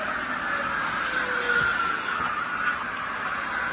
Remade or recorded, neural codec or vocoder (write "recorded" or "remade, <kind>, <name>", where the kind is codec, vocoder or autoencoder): recorded